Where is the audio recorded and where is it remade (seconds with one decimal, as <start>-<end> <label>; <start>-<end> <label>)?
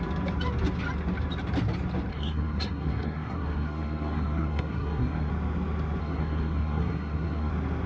0.0-2.1 recorded; 2.1-5.3 remade; 5.3-6.0 recorded; 6.0-7.5 remade; 7.5-7.9 recorded